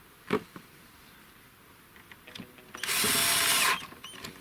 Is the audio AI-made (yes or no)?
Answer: no